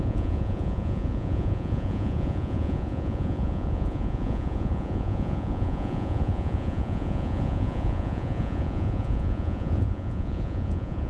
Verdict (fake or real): fake